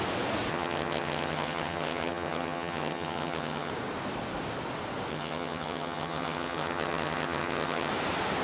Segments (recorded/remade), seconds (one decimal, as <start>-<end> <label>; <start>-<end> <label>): 0.0-0.5 recorded; 0.5-3.7 remade; 3.7-5.1 recorded; 5.1-7.9 remade; 7.9-8.4 recorded